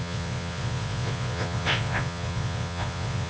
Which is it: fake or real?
fake